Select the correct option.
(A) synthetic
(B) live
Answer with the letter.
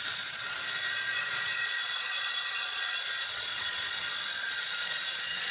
A